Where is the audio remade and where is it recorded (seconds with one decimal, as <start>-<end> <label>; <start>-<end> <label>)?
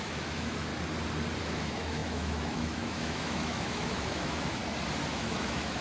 0.0-0.7 remade; 0.7-1.4 recorded; 1.4-4.6 remade; 4.6-5.1 recorded; 5.1-5.8 remade